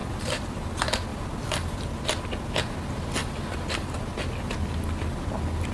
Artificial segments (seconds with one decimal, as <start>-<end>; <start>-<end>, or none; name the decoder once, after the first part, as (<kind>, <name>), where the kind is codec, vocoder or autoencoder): none